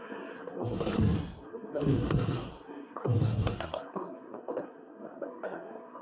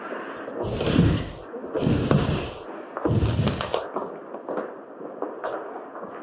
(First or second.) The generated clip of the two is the first